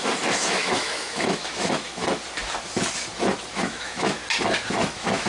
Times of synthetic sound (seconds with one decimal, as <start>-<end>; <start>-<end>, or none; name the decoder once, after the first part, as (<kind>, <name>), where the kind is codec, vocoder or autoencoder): 0.0-2.0 (autoencoder, DAC-VAE); 3.5-4.2; 4.7-5.3